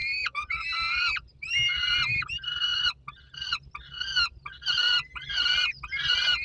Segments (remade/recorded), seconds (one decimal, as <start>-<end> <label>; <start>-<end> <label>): 0.0-2.7 remade; 2.7-6.0 recorded; 6.0-6.4 remade